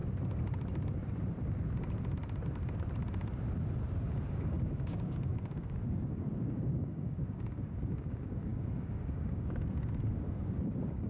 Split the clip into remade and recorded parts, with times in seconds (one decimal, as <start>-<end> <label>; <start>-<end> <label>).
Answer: 0.0-4.3 recorded; 4.3-11.1 remade